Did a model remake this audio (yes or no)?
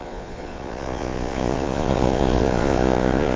yes